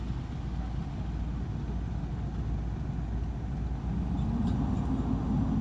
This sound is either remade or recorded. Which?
recorded